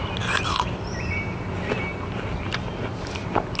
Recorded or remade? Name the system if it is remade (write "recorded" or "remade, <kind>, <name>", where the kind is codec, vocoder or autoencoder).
recorded